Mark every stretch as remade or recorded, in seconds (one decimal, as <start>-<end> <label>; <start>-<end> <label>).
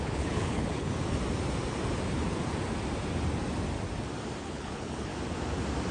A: 0.0-0.9 remade; 0.9-4.4 recorded; 4.4-5.1 remade; 5.1-5.9 recorded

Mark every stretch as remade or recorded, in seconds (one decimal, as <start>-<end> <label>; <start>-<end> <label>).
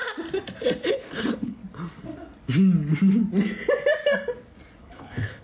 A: 0.0-0.9 recorded; 0.9-1.6 remade; 1.6-4.8 recorded; 4.8-5.4 remade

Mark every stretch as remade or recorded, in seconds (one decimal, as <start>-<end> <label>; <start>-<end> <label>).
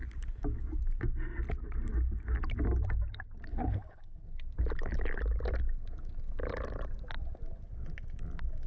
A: 0.0-3.5 recorded; 3.5-4.2 remade; 4.2-8.7 recorded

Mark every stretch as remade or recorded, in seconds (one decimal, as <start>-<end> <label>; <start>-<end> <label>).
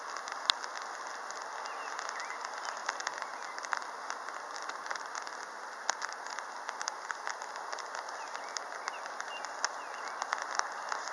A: 0.0-11.1 recorded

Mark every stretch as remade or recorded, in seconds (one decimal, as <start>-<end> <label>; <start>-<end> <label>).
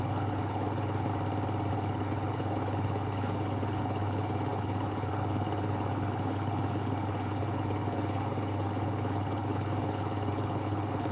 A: 0.0-1.1 remade; 1.1-1.7 recorded; 1.7-11.1 remade